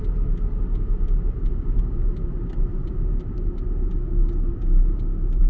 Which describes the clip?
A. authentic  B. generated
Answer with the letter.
A